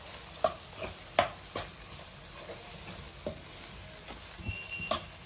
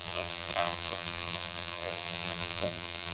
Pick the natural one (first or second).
first